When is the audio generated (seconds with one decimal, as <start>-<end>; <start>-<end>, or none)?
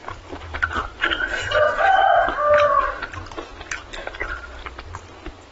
0.0-1.7; 4.2-5.0